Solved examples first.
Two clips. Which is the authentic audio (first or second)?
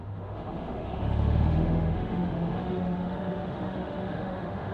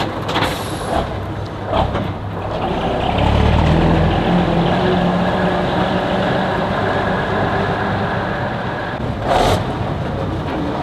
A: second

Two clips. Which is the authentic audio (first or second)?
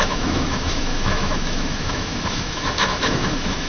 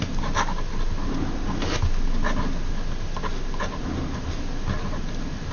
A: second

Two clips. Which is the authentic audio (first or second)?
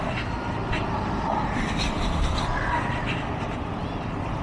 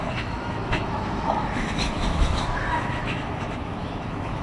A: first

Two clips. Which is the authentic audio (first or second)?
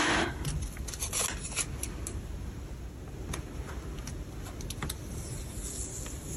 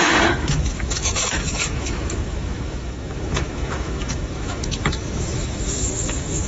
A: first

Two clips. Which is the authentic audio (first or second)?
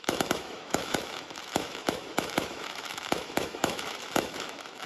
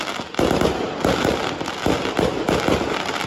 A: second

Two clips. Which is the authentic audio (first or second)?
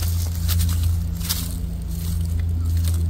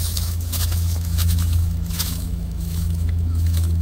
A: first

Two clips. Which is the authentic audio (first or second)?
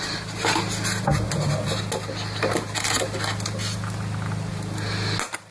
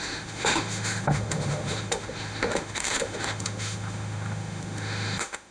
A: first